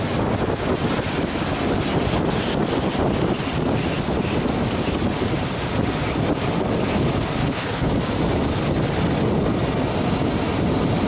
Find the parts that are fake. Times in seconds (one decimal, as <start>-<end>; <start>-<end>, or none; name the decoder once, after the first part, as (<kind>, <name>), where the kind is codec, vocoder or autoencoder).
7.4-7.9 (codec, HILCodec)